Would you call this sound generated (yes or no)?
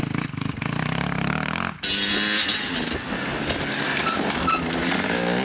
no